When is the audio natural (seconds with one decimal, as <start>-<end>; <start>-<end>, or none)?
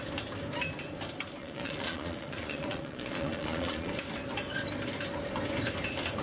0.0-1.4; 3.9-6.2